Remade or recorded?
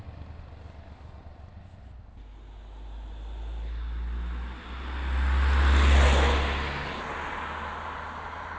recorded